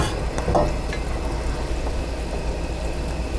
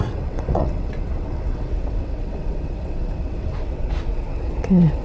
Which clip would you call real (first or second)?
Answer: first